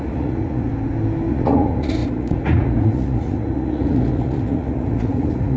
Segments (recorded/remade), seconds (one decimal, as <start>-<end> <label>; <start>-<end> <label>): 0.0-0.7 remade; 0.7-1.3 recorded; 1.3-5.6 remade